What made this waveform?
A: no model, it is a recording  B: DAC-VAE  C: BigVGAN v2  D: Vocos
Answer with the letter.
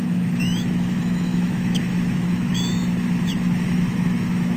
B